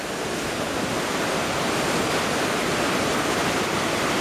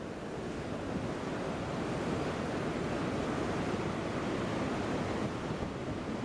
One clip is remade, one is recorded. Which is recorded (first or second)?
second